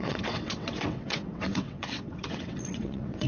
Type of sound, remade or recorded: remade